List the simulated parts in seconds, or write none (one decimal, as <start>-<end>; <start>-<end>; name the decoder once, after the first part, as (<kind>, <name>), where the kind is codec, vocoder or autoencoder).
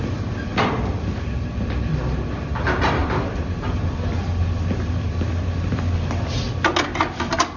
0.5-1.3 (vocoder, BigVGAN v2); 3.0-6.3